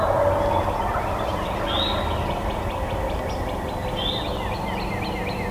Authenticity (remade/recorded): recorded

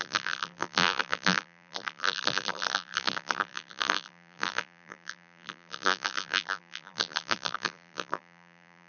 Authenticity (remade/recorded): remade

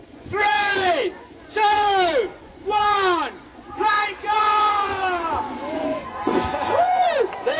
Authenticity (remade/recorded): remade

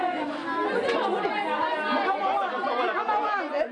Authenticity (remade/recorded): recorded